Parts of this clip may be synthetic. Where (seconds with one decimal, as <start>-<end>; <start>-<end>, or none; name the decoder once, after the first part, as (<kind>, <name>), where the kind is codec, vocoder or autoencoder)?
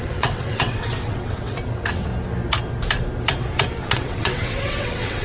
0.0-2.1 (vocoder, WaveNeXt); 3.8-5.2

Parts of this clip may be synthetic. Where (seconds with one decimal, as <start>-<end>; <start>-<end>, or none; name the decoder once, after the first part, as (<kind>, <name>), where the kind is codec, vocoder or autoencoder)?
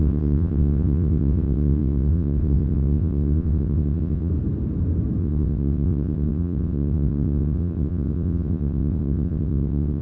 0.0-4.3 (vocoder, WaveNeXt); 5.2-10.0